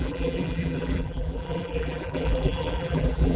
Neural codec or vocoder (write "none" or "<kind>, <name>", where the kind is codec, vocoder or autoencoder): vocoder, BigVGAN v2